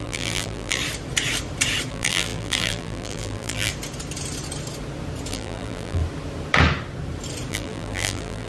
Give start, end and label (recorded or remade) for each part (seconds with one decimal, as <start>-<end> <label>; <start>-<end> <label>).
0.0-0.8 remade; 0.8-1.9 recorded; 1.9-3.7 remade; 3.7-5.3 recorded; 5.3-6.0 remade; 6.0-7.5 recorded; 7.5-8.5 remade